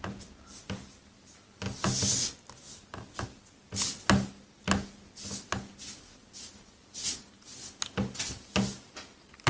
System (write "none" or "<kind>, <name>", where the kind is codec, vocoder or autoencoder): none